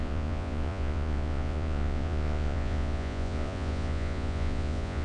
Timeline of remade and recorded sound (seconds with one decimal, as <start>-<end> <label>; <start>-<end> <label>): 0.0-5.0 remade